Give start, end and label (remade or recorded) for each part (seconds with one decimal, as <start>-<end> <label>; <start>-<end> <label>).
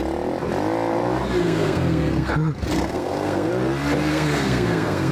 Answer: 0.0-1.4 recorded; 1.4-2.3 remade; 2.3-2.7 recorded; 2.7-3.5 remade; 3.5-4.1 recorded; 4.1-5.1 remade